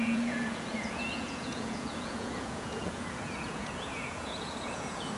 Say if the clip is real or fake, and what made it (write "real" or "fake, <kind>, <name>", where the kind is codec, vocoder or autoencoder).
fake, vocoder, Vocos